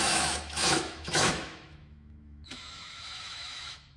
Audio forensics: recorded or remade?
remade